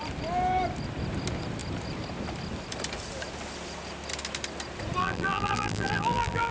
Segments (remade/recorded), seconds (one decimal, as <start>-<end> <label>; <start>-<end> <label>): 0.0-5.0 recorded; 5.0-6.5 remade